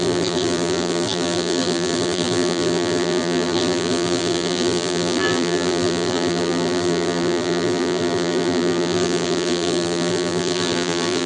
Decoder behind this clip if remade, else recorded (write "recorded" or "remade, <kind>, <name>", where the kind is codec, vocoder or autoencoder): remade, vocoder, BigVGAN v2